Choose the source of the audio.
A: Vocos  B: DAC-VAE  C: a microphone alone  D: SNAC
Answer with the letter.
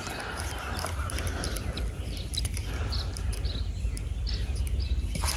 C